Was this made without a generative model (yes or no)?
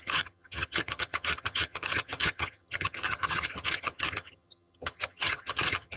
no